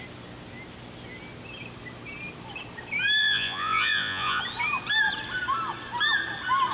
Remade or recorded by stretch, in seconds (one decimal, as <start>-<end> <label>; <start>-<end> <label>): 0.0-3.2 recorded; 3.2-4.4 remade; 4.4-6.7 recorded